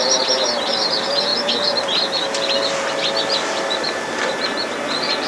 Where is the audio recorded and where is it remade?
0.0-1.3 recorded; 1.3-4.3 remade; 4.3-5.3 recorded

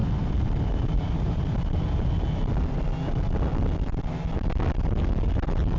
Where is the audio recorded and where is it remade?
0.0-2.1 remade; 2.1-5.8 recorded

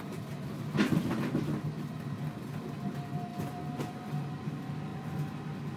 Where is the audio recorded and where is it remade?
0.0-5.8 recorded

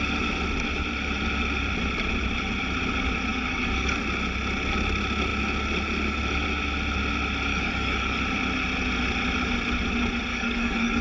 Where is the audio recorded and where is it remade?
0.0-3.3 recorded; 3.3-4.0 remade; 4.0-7.5 recorded; 7.5-8.2 remade; 8.2-10.3 recorded; 10.3-11.0 remade